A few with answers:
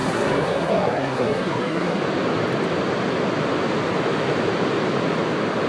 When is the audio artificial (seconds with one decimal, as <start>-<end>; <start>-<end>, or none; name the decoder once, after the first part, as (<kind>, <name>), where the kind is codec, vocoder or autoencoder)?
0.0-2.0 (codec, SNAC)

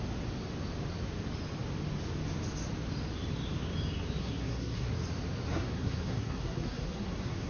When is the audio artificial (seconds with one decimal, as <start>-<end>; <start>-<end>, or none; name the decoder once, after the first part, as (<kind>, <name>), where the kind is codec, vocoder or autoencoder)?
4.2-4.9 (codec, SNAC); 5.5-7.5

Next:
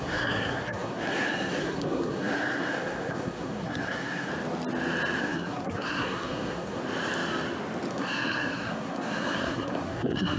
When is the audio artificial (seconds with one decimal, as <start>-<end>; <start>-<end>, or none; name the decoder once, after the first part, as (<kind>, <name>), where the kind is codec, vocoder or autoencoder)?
0.0-4.3 (codec, SNAC); 5.2-6.8; 7.9-10.4